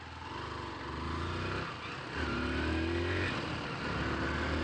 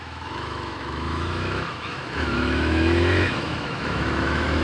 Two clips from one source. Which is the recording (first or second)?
first